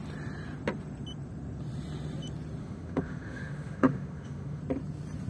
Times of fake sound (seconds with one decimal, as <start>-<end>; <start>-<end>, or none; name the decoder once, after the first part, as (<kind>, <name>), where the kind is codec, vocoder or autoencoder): 2.6-4.6 (autoencoder, DAC-VAE)